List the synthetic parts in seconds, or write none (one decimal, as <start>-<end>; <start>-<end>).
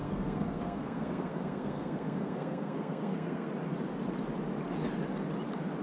0.0-3.5